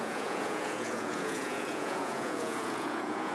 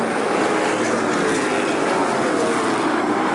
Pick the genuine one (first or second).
second